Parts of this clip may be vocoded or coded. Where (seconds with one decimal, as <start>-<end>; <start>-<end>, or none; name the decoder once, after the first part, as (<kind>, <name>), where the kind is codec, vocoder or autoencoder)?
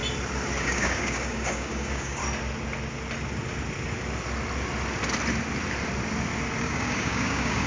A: 0.6-2.2 (codec, DAC); 6.6-7.7